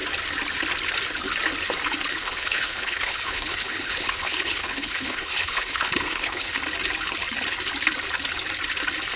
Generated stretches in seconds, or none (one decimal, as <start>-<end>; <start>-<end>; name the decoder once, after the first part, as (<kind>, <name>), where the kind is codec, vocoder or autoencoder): 2.1-6.6 (codec, HILCodec)